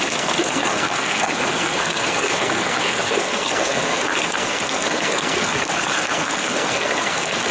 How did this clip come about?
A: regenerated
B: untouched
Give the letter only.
A